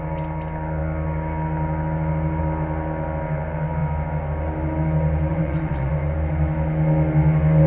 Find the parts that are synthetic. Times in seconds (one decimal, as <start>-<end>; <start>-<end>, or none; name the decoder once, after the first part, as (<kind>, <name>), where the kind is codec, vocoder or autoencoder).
5.3-5.9 (vocoder, Vocos)